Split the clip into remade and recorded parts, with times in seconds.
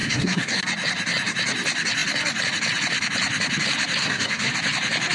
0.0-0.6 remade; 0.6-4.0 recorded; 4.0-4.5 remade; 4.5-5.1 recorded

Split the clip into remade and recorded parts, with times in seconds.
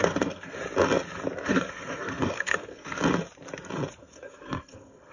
0.0-0.6 remade; 0.6-1.5 recorded; 1.5-3.0 remade; 3.0-4.0 recorded; 4.0-5.1 remade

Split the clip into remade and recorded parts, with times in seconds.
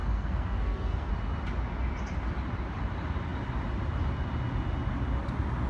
0.0-1.1 remade; 1.1-5.7 recorded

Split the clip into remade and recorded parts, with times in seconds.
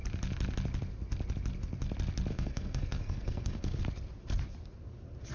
0.0-2.3 recorded; 2.3-3.8 remade; 3.8-5.3 recorded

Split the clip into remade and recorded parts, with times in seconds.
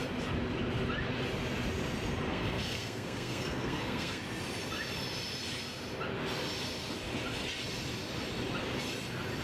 0.0-2.3 recorded; 2.3-4.2 remade; 4.2-9.4 recorded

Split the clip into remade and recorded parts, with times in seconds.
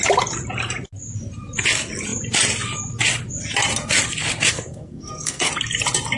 0.0-4.5 recorded; 4.5-5.5 remade; 5.5-6.2 recorded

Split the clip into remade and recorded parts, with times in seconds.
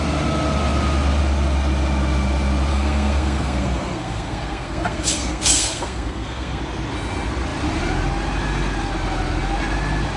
0.0-2.7 recorded; 2.7-6.6 remade; 6.6-10.2 recorded